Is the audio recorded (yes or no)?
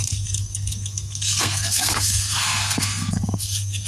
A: no